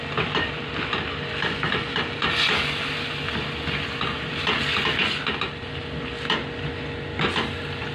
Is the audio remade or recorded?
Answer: recorded